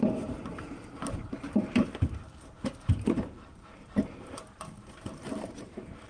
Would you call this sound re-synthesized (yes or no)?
yes